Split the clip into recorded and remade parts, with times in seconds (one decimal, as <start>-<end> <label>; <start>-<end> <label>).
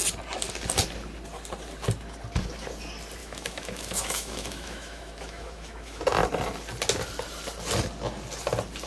0.0-3.2 recorded; 3.2-6.0 remade; 6.0-8.9 recorded